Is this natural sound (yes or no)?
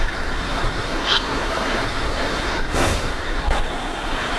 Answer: no